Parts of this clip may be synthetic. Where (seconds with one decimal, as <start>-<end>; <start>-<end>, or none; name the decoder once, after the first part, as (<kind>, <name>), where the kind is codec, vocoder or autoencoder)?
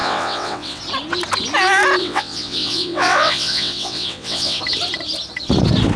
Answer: 0.0-0.8 (vocoder, WaveNeXt); 2.0-4.6